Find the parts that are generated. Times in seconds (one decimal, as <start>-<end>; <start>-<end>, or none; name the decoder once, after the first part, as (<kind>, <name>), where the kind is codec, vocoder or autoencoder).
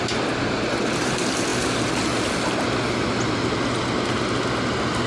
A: none